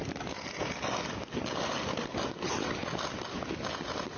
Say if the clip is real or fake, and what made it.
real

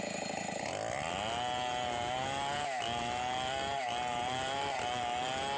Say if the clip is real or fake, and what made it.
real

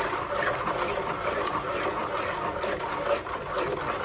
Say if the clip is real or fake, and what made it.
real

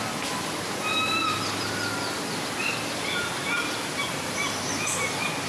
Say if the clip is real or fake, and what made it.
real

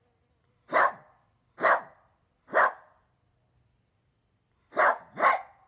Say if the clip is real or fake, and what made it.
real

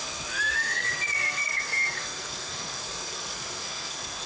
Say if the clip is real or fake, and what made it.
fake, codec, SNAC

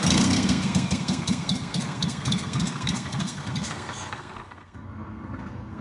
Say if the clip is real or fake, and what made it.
fake, codec, SNAC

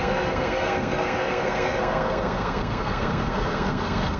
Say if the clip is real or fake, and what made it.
fake, codec, SNAC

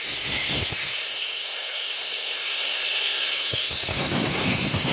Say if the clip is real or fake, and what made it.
fake, codec, SNAC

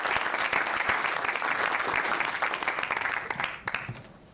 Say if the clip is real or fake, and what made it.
real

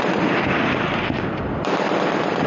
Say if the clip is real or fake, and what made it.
real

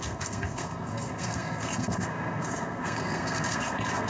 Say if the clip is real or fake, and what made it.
fake, codec, SNAC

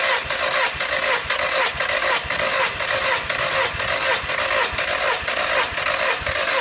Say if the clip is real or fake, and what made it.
real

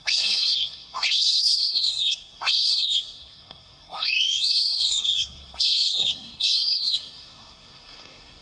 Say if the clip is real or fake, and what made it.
fake, codec, SNAC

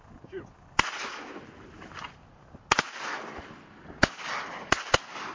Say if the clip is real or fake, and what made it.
real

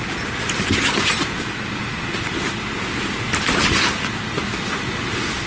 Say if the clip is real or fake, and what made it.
real